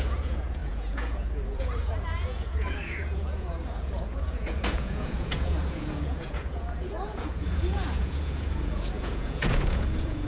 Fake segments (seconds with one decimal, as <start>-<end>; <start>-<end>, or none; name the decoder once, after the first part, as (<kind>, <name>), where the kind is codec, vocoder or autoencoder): 0.0-10.3 (vocoder, Vocos)